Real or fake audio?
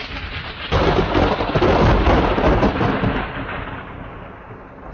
real